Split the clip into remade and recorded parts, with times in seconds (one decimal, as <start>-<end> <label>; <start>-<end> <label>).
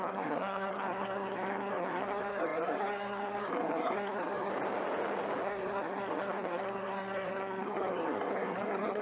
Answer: 0.0-4.5 remade; 4.5-5.4 recorded; 5.4-9.0 remade